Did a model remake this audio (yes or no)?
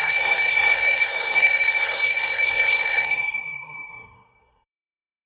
yes